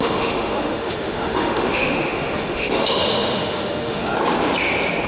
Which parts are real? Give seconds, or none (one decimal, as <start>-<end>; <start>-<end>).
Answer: 4.1-5.1